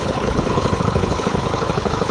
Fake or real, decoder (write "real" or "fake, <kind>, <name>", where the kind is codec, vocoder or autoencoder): fake, codec, HILCodec